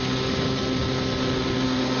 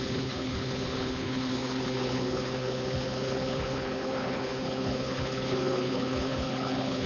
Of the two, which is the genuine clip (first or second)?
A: first